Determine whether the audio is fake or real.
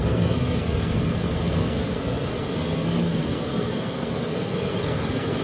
fake